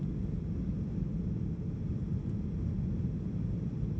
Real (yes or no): yes